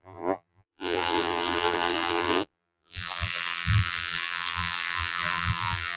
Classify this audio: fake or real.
fake